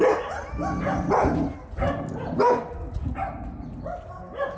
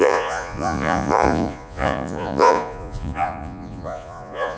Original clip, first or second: first